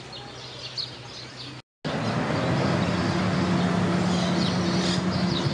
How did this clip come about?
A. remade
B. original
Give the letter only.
B